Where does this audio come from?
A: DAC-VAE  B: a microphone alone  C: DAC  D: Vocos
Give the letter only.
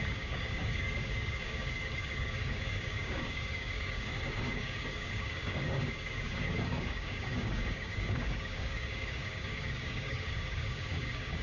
C